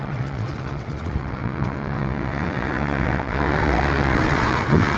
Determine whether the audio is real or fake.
fake